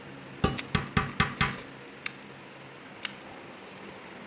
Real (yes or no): yes